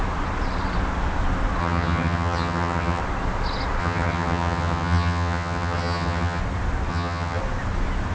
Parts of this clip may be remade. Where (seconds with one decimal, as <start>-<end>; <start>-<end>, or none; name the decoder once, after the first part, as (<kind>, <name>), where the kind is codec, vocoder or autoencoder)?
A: 1.6-3.0 (vocoder, HiFi-GAN); 3.8-6.4; 6.9-7.4